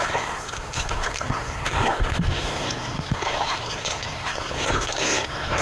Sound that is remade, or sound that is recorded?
remade